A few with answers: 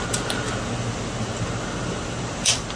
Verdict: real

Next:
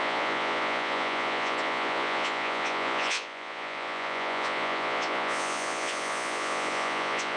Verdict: fake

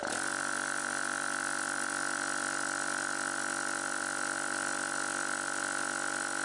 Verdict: real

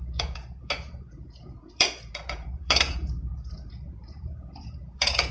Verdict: fake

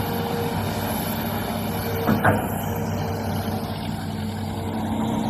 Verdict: real